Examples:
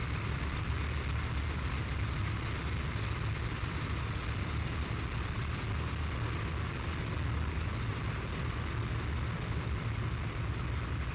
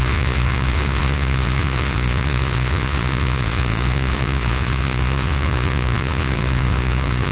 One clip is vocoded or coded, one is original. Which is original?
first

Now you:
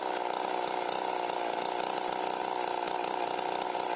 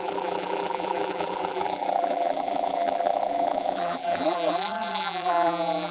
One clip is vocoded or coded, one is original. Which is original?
first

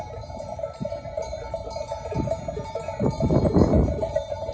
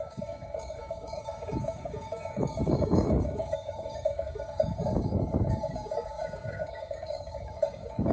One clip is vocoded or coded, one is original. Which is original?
first